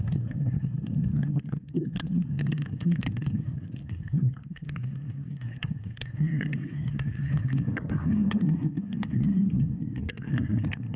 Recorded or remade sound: remade